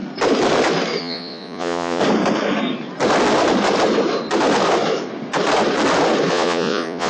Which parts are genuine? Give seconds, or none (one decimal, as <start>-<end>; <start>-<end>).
0.0-1.0; 2.0-6.3